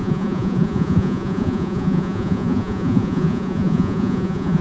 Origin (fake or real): fake